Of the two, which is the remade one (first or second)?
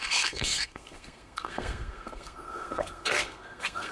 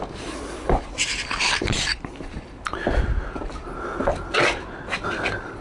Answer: first